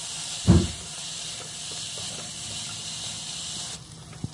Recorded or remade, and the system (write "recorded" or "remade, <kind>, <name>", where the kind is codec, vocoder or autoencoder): recorded